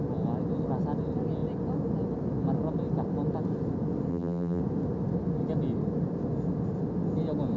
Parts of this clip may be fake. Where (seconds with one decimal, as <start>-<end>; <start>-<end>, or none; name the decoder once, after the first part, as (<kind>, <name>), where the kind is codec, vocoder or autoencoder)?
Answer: 4.1-4.6 (vocoder, BigVGAN v2)